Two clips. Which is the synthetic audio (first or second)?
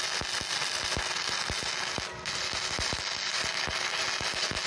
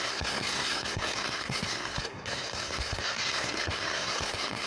second